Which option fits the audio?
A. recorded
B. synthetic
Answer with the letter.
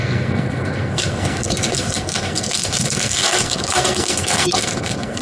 B